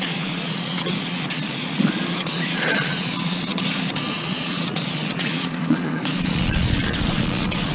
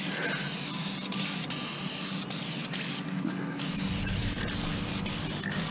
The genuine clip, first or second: second